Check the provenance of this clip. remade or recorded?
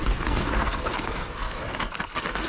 remade